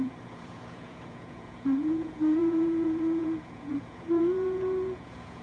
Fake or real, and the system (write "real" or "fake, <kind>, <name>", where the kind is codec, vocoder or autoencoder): fake, vocoder, Vocos